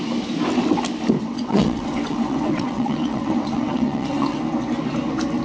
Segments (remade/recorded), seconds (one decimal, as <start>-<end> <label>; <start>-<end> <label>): 0.0-1.2 recorded; 1.2-4.4 remade; 4.4-5.4 recorded